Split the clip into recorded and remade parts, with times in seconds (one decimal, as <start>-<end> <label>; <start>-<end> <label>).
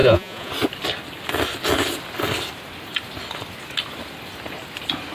0.0-0.5 remade; 0.5-5.1 recorded